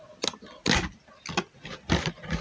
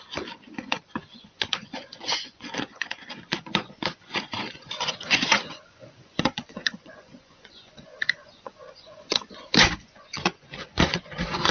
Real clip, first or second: first